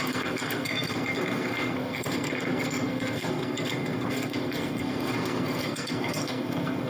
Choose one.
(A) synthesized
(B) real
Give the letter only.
A